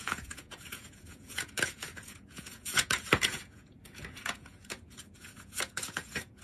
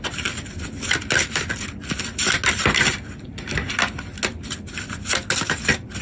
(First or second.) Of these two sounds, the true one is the second